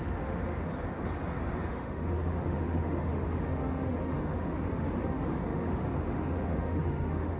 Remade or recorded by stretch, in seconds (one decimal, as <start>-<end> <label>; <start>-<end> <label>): 0.0-0.7 remade; 0.7-1.7 recorded; 1.7-7.4 remade